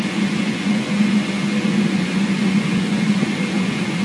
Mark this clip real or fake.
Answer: fake